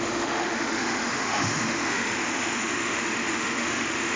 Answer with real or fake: fake